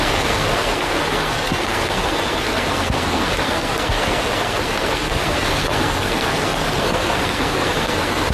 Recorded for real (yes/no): no